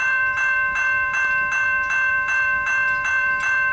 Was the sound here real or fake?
fake